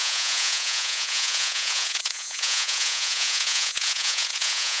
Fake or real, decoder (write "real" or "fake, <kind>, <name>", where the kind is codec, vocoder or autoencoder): fake, vocoder, Vocos